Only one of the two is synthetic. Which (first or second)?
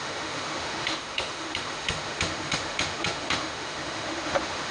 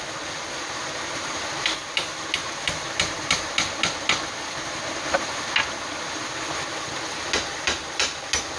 first